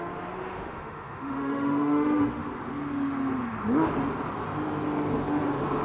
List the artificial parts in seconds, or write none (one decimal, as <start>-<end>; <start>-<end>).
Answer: 0.5-2.5